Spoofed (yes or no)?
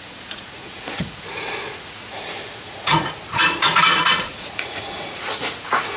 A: yes